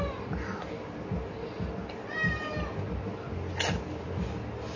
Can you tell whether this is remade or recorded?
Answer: recorded